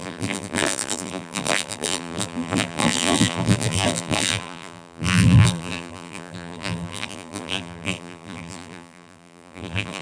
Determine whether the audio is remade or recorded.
remade